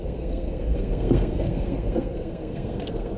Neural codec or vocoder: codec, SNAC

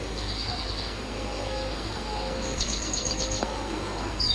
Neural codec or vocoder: codec, SNAC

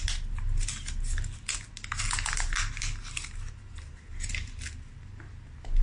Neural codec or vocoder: none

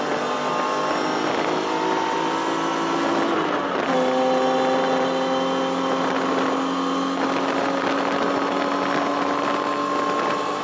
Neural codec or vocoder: none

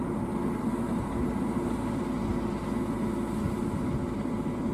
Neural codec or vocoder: none